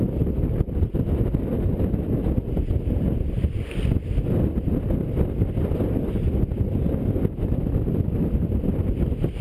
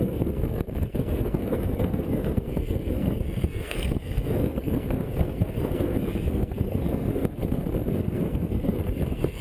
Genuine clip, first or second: first